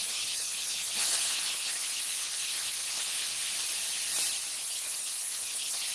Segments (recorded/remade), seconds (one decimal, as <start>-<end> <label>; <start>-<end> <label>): 0.0-3.5 remade; 3.5-4.6 recorded; 4.6-5.9 remade